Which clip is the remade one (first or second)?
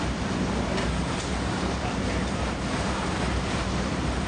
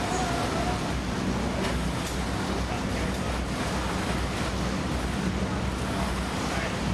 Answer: first